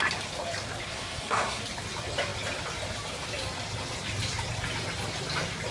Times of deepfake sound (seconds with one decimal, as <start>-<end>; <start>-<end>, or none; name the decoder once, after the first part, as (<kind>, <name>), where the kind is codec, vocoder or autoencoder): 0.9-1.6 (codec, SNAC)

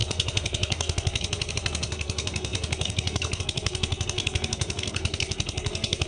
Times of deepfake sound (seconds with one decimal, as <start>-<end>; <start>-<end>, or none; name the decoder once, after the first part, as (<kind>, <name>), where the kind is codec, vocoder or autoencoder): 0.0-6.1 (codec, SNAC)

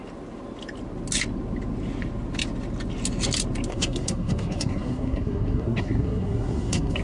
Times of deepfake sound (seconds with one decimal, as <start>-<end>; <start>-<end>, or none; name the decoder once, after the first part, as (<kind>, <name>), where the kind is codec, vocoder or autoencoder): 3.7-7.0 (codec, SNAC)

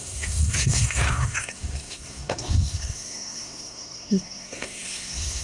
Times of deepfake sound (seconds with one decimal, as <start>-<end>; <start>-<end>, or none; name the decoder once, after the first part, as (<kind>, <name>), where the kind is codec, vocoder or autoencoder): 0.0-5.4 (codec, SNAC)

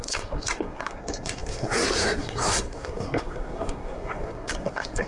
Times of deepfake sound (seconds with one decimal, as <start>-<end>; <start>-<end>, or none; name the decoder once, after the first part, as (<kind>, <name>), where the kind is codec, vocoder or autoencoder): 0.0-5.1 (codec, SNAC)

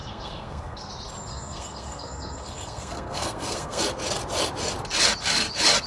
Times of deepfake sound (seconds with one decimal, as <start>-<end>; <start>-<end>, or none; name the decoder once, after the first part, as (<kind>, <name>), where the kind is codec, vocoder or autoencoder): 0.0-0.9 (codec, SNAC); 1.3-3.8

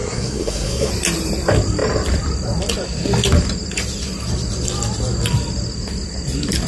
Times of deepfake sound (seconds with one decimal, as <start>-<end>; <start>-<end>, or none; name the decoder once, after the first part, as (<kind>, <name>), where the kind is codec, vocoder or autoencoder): 0.0-0.9 (codec, SNAC)

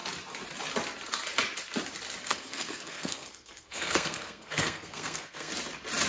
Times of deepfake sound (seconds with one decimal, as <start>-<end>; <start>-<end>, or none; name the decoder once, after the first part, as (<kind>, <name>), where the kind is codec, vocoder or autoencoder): 2.2-5.5 (codec, SNAC)